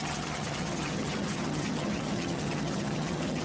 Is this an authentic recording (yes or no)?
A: no